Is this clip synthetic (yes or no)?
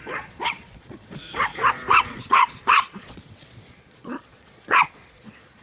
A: yes